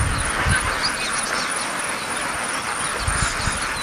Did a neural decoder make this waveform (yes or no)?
no